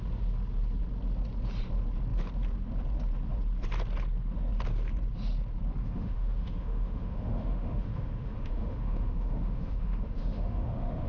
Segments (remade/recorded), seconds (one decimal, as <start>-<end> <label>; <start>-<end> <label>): 0.0-5.8 recorded; 5.8-11.1 remade